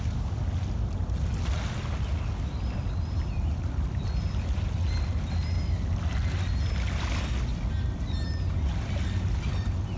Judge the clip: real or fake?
real